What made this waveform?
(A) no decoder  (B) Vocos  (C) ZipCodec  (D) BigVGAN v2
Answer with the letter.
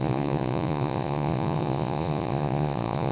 B